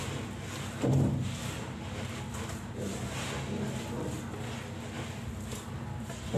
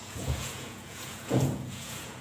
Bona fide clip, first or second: first